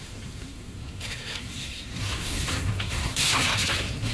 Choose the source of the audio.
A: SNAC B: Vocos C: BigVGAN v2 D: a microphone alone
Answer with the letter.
A